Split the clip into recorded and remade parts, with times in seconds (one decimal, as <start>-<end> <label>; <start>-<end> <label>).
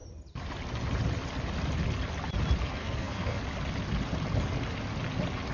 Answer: 0.0-2.8 recorded; 2.8-3.4 remade; 3.4-5.5 recorded